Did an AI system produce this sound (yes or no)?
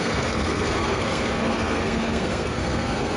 yes